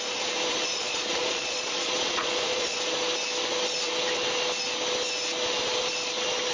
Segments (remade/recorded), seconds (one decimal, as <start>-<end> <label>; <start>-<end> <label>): 0.0-0.7 recorded; 0.7-2.8 remade; 2.8-6.5 recorded